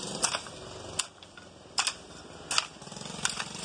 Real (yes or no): yes